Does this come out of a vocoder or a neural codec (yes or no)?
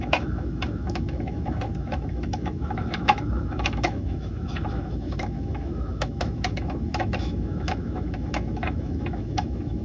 yes